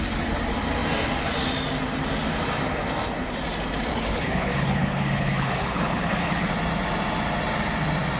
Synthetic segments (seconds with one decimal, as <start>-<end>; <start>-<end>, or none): 3.9-6.5